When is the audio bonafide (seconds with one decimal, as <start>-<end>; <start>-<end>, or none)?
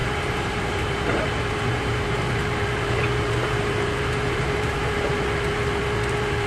2.3-3.4; 5.1-6.5